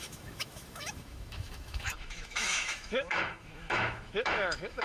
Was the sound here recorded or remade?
remade